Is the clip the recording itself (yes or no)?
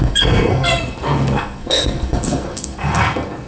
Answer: no